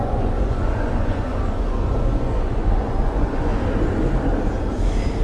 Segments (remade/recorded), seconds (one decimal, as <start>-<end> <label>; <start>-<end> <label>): 0.0-3.5 remade; 3.5-5.2 recorded